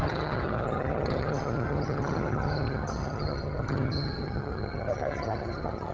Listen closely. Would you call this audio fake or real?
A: fake